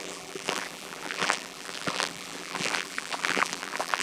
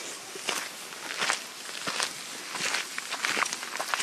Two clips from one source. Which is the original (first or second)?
second